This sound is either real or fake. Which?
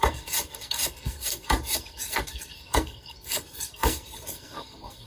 fake